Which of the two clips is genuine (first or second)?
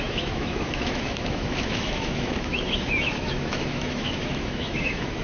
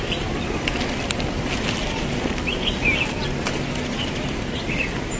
second